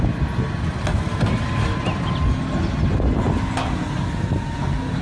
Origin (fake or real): real